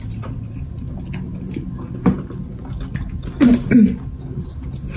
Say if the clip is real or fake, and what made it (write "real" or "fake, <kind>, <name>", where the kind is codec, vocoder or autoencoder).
real